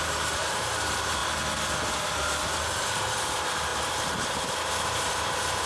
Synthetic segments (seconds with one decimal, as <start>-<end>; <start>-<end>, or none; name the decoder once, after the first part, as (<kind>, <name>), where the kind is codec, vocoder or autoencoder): 0.0-1.2 (vocoder, BigVGAN v2); 2.8-5.7